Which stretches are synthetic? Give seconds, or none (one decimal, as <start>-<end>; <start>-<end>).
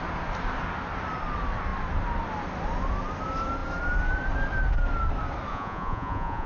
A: 5.5-6.5